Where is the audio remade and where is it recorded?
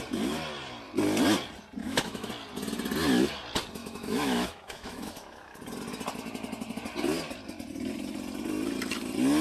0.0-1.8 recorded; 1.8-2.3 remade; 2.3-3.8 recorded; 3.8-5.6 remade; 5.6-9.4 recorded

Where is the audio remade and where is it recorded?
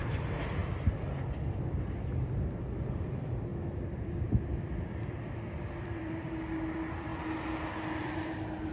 0.0-0.6 remade; 0.6-2.6 recorded; 2.6-3.5 remade; 3.5-5.8 recorded; 5.8-7.1 remade; 7.1-8.0 recorded; 8.0-8.7 remade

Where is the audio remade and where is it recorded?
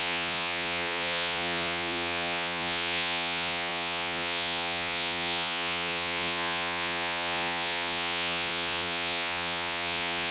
0.0-10.3 remade